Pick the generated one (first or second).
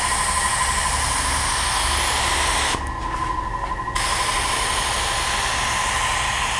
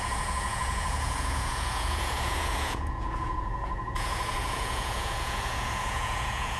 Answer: second